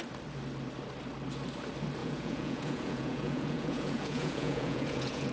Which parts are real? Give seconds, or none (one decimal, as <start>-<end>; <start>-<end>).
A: 0.0-2.0